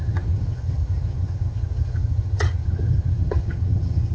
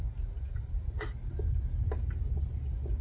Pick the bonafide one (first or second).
second